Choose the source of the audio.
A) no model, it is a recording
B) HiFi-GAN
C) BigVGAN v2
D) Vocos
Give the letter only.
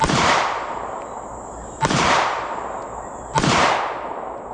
A